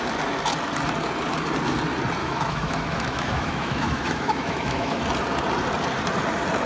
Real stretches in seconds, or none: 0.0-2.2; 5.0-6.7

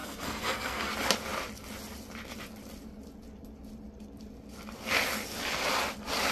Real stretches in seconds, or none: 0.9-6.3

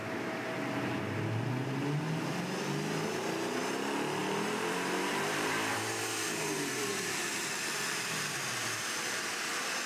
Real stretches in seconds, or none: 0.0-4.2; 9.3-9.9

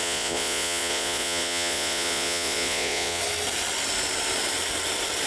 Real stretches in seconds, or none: 3.2-5.3

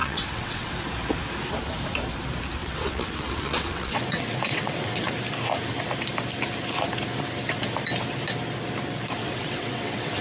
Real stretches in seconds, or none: 0.7-2.6; 5.1-9.2